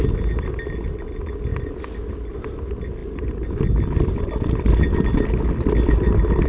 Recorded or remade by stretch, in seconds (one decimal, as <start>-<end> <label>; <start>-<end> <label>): 0.0-6.5 recorded